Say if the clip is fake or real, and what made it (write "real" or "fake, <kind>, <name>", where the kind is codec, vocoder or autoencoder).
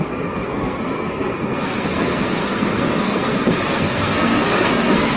fake, codec, SNAC